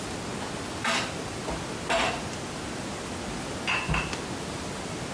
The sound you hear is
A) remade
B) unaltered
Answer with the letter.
B